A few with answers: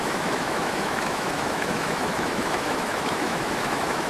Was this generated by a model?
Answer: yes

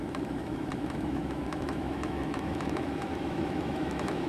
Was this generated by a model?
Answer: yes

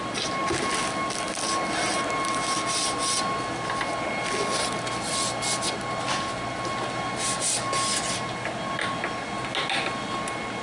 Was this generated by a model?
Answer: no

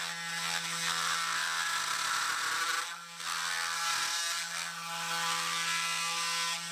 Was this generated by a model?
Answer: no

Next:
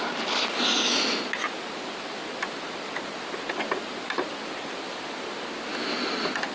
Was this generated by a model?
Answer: no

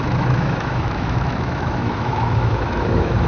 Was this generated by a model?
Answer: yes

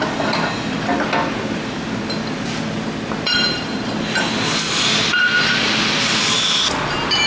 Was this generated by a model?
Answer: no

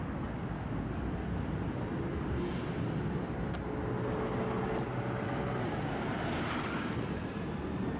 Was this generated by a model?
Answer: no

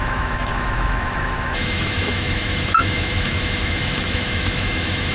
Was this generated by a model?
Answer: yes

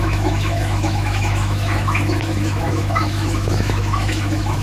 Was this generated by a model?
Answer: yes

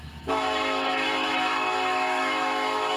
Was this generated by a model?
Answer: yes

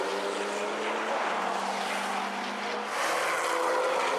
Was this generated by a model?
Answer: no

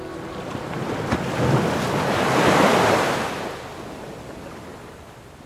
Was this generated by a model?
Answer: no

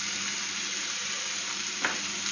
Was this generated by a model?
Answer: no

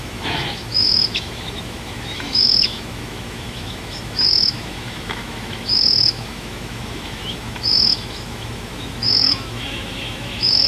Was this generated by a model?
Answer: yes